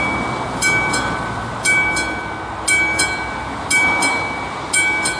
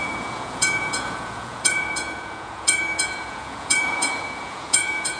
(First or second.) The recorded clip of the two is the first